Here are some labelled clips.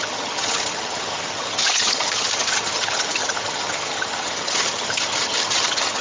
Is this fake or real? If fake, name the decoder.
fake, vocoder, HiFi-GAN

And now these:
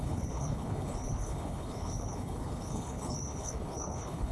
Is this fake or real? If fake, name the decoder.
fake, codec, HILCodec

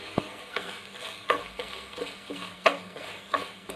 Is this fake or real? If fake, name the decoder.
fake, codec, SNAC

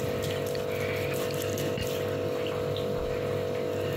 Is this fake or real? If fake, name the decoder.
real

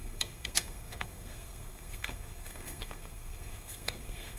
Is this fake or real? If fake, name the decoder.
fake, codec, SNAC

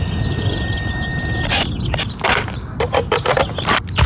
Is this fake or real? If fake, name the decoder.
real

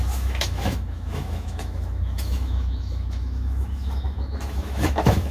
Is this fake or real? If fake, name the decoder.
fake, autoencoder, DAC-VAE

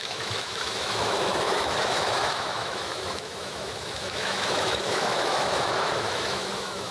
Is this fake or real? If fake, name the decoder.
fake, autoencoder, DAC-VAE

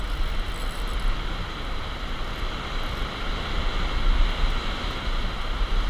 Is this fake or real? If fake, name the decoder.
real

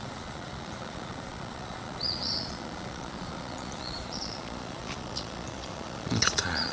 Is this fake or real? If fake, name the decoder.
fake, vocoder, Vocos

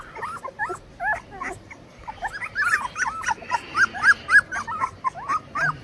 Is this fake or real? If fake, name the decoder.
real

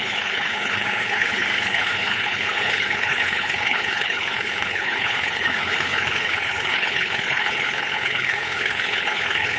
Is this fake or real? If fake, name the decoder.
fake, codec, HILCodec